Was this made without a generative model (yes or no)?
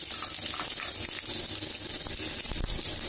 yes